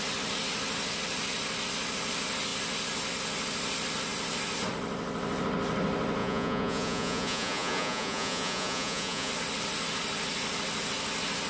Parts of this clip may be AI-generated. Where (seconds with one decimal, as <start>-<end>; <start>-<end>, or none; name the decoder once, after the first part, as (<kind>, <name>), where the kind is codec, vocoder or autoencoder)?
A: 6.2-9.3 (vocoder, Vocos)